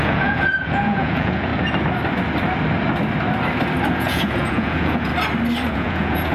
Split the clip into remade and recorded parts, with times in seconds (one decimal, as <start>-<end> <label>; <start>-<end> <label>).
0.0-1.5 remade; 1.5-3.9 recorded; 3.9-5.1 remade; 5.1-5.7 recorded; 5.7-6.3 remade

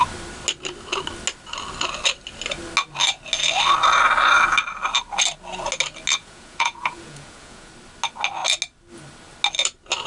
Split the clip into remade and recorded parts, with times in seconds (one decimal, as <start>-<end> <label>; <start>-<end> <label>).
0.0-6.2 recorded; 6.2-7.7 remade; 7.7-10.1 recorded

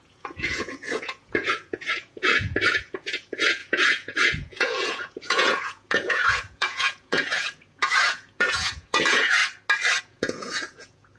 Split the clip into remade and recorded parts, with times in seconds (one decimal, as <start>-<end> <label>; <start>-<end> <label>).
0.0-9.4 remade; 9.4-10.0 recorded; 10.0-11.2 remade

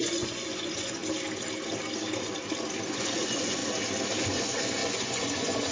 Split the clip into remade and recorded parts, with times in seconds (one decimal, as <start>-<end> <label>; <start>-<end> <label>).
0.0-1.0 remade; 1.0-2.9 recorded; 2.9-3.6 remade; 3.6-4.2 recorded; 4.2-5.7 remade

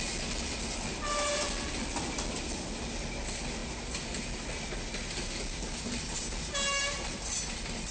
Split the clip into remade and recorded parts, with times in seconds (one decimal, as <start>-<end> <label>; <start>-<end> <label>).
0.0-7.9 recorded

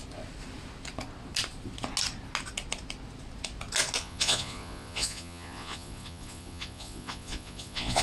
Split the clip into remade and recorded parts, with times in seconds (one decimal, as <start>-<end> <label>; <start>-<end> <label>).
0.0-4.0 recorded; 4.0-8.0 remade

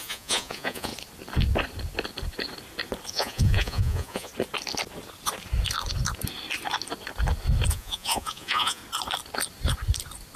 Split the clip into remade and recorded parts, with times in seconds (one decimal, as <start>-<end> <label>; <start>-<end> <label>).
0.0-0.9 remade; 0.9-3.1 recorded; 3.1-4.3 remade; 4.3-7.7 recorded; 7.7-8.8 remade; 8.8-10.4 recorded